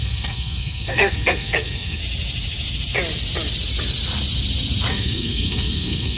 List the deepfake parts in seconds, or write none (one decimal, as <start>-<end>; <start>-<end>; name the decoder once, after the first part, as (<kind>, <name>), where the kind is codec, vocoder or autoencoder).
0.0-2.0 (codec, SNAC); 4.9-6.2